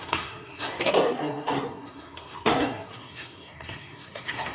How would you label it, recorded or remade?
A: remade